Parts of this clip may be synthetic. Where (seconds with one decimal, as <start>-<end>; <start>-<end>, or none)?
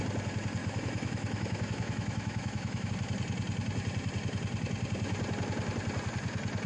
0.6-2.9